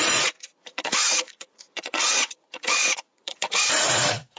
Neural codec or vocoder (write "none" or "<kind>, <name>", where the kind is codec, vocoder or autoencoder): vocoder, Vocos